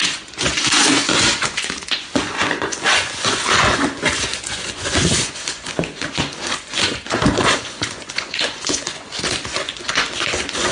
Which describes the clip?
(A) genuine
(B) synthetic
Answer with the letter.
B